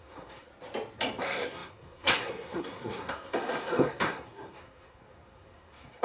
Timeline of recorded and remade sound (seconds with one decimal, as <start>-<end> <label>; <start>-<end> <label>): 0.0-0.5 remade; 0.5-1.2 recorded; 1.2-6.0 remade